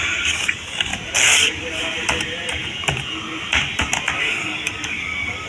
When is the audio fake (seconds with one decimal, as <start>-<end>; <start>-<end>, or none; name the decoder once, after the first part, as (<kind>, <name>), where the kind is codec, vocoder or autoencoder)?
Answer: 0.0-0.9 (codec, DAC); 4.2-5.5

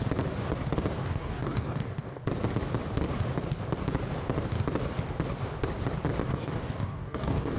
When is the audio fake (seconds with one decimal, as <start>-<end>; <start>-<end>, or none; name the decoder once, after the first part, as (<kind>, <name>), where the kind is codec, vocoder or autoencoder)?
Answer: 1.0-2.2 (codec, DAC); 6.2-7.6

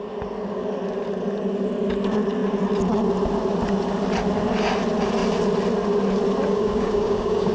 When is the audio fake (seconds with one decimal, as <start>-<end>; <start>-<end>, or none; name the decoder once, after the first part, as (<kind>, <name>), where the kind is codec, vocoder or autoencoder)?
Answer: 6.5-7.5 (codec, DAC)

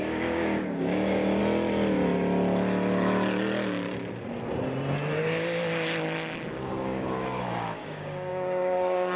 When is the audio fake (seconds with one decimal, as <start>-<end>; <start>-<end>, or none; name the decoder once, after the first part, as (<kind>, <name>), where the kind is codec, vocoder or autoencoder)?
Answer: 0.0-1.4 (codec, DAC); 6.7-9.2

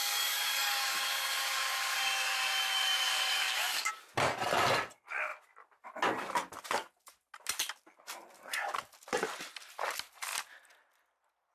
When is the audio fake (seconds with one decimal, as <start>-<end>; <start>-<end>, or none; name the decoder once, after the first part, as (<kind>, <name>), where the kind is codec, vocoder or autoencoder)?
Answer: 0.0-3.9 (codec, DAC)

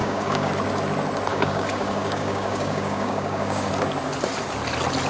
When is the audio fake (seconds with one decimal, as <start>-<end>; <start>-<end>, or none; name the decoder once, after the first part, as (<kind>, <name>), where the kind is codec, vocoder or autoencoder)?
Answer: 0.0-0.5 (codec, DAC); 1.3-3.7

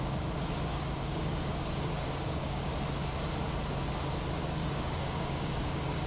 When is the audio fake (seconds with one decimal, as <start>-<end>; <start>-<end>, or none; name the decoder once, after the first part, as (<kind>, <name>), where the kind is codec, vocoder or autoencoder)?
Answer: 0.0-2.7 (codec, DAC); 4.3-6.1

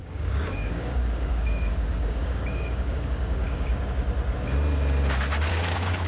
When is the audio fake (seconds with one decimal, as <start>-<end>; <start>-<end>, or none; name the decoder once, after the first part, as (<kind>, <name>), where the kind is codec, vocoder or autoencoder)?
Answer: 0.0-3.7 (codec, DAC); 5.5-6.1